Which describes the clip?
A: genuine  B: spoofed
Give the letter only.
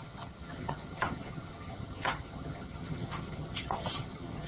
B